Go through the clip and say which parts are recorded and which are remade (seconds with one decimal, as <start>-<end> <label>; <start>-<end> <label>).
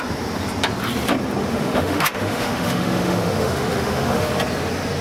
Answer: 0.0-1.4 recorded; 1.4-4.3 remade; 4.3-5.0 recorded